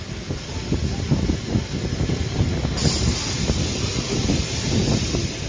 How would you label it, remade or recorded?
recorded